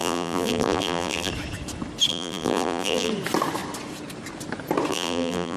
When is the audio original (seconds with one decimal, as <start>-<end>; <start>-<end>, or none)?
1.3-2.1; 3.1-4.9